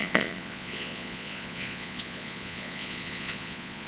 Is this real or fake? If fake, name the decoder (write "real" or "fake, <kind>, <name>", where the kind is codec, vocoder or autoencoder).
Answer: fake, vocoder, Vocos